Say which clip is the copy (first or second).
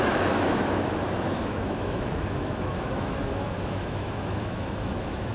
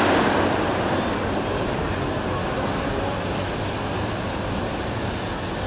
first